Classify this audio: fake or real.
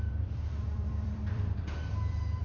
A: fake